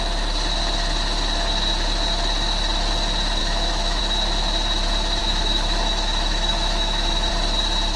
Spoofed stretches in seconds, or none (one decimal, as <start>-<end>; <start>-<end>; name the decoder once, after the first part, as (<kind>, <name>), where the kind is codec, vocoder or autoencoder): 3.4-4.0 (autoencoder, DAC-VAE); 5.2-7.3